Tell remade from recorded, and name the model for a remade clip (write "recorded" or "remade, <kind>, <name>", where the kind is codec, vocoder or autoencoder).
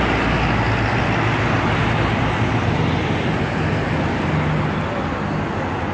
recorded